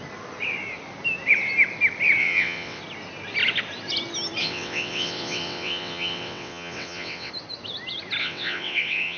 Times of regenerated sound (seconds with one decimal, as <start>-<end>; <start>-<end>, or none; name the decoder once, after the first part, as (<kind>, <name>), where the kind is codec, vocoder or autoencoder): 2.2-2.8 (vocoder, WaveNeXt); 4.4-7.3; 8.2-9.2